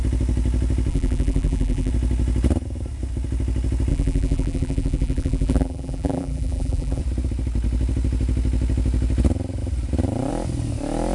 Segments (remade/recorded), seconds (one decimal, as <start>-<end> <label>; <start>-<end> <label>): 0.0-0.9 recorded; 0.9-1.9 remade; 1.9-3.9 recorded; 3.9-7.0 remade; 7.0-11.1 recorded